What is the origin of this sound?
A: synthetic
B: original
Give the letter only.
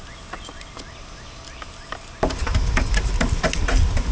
B